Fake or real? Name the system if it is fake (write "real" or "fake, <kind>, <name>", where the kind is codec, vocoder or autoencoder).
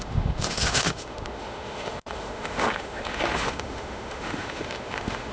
fake, autoencoder, DAC-VAE